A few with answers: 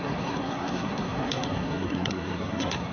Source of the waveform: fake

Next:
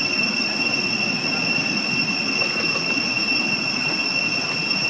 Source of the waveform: real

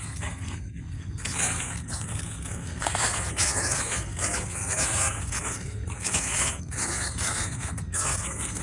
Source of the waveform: fake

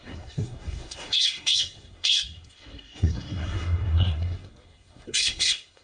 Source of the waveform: fake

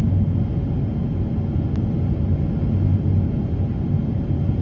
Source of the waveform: real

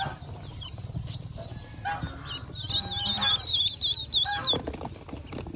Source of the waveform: real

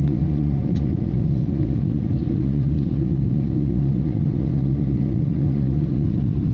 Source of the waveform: fake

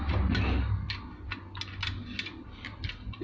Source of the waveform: real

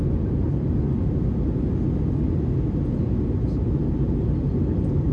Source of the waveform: real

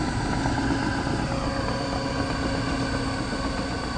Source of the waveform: real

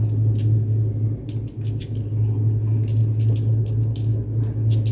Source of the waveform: real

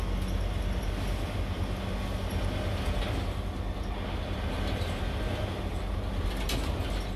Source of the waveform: real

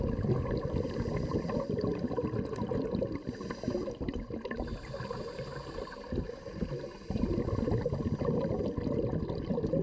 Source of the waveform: real